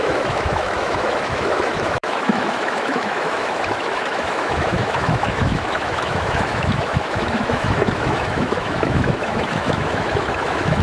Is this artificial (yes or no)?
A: yes